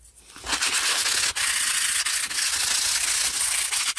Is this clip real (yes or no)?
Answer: yes